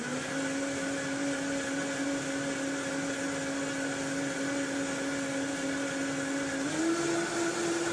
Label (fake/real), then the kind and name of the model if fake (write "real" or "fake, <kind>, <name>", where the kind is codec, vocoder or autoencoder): real